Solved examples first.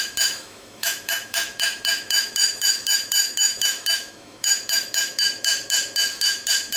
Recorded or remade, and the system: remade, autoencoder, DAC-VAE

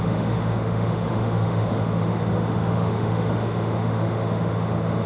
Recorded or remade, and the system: remade, autoencoder, DAC-VAE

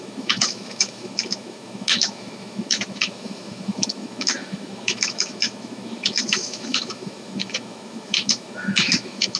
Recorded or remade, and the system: remade, autoencoder, DAC-VAE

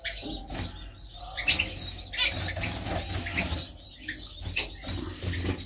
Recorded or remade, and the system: recorded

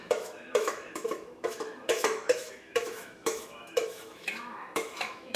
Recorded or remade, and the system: remade, autoencoder, DAC-VAE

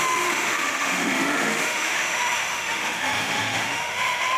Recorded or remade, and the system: remade, autoencoder, DAC-VAE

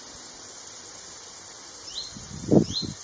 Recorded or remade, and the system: recorded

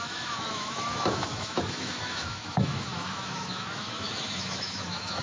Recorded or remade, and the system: remade, autoencoder, DAC-VAE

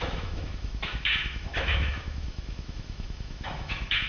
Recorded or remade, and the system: remade, autoencoder, DAC-VAE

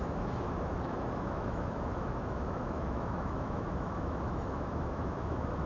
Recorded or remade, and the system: remade, autoencoder, DAC-VAE